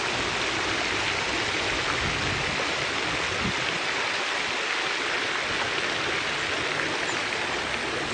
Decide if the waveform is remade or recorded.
recorded